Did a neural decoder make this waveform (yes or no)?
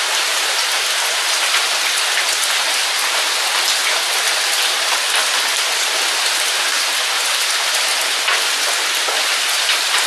no